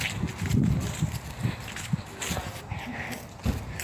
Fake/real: real